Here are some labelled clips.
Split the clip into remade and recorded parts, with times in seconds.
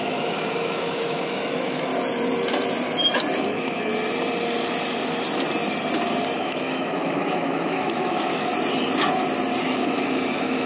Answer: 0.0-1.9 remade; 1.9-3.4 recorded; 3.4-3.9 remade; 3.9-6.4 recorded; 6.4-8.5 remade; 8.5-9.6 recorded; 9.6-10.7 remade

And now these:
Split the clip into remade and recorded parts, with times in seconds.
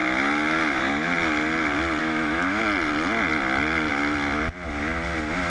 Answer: 0.0-2.0 recorded; 2.0-2.6 remade; 2.6-5.5 recorded